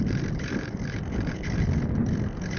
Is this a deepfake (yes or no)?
no